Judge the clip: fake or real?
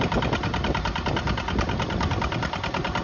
real